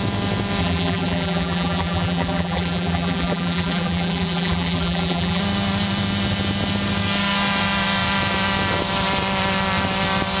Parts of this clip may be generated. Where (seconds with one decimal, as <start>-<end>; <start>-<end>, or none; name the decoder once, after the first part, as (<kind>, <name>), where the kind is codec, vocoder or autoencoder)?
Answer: 0.6-5.4 (vocoder, BigVGAN v2)